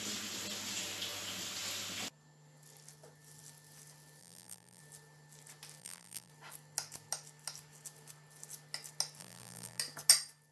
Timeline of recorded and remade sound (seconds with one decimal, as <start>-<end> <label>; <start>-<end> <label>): 0.0-4.2 recorded; 4.2-4.8 remade; 4.8-5.8 recorded; 5.8-6.3 remade; 6.3-9.2 recorded; 9.2-9.8 remade; 9.8-10.5 recorded

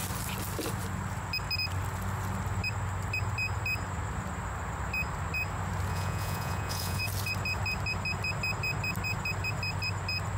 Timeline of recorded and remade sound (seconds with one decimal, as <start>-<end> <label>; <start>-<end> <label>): 0.0-5.9 recorded; 5.9-7.0 remade; 7.0-10.4 recorded

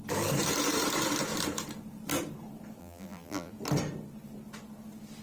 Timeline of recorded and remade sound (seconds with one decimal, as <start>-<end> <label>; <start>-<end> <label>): 0.0-2.8 recorded; 2.8-3.5 remade; 3.5-5.2 recorded